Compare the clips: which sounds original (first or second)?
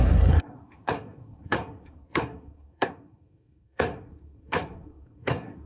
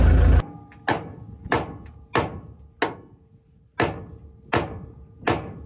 second